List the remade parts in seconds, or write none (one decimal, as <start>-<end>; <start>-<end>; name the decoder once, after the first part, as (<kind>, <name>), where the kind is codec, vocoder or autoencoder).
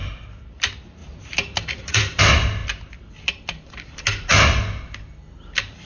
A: 1.0-2.2 (vocoder, BigVGAN v2)